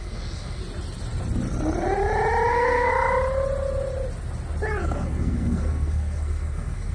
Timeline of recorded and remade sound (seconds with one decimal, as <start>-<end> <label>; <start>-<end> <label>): 0.0-0.6 remade; 0.6-2.5 recorded; 2.5-2.9 remade; 2.9-4.8 recorded; 4.8-6.9 remade